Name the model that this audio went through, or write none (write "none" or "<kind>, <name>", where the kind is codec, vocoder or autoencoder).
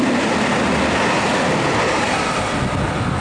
none